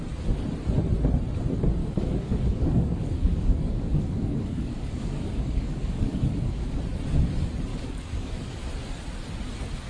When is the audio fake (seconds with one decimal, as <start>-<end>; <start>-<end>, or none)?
1.8-6.8; 7.7-8.7

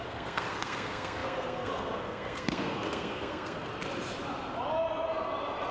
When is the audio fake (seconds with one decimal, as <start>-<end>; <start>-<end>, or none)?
0.0-3.7

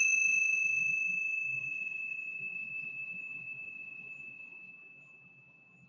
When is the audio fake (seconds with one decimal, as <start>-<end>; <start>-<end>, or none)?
1.6-4.7

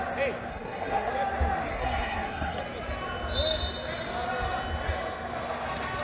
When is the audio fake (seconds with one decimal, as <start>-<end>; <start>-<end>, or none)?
0.5-1.1; 1.7-2.6

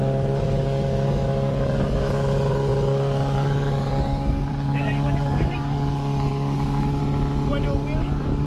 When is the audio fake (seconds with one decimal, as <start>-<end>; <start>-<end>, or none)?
0.0-7.0; 8.0-8.5

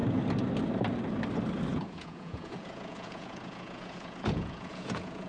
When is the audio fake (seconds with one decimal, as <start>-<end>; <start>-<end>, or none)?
1.7-5.3

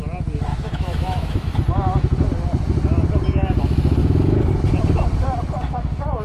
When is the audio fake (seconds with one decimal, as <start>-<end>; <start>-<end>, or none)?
0.5-1.5; 4.0-4.5